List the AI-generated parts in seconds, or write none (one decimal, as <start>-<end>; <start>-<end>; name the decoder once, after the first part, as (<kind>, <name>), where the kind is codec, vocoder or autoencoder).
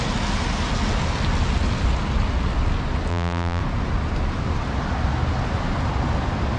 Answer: 3.1-3.6 (vocoder, BigVGAN v2)